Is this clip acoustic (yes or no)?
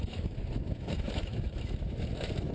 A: no